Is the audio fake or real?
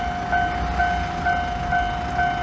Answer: real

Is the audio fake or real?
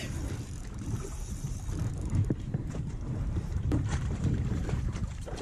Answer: fake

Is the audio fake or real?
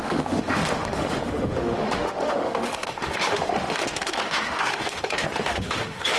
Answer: fake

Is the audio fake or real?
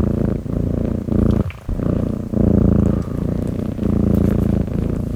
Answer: real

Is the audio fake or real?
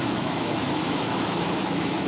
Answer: fake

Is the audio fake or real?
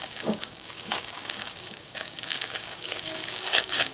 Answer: fake